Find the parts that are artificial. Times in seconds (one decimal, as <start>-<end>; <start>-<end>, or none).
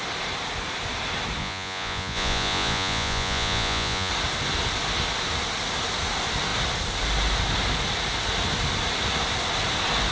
1.4-4.1